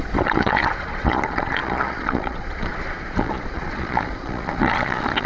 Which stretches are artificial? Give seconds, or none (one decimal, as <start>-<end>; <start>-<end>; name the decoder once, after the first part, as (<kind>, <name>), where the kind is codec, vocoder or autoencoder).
0.0-5.3 (vocoder, Vocos)